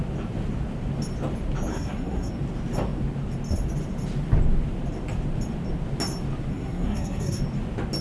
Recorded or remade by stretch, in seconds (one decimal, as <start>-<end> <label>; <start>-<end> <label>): 0.0-1.7 recorded; 1.7-2.3 remade; 2.3-6.5 recorded; 6.5-7.4 remade; 7.4-8.0 recorded

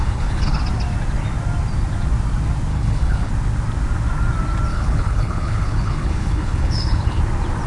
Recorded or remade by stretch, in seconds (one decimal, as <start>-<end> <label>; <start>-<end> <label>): 0.0-0.6 remade; 0.6-2.7 recorded; 2.7-3.3 remade; 3.3-4.7 recorded; 4.7-7.2 remade; 7.2-7.7 recorded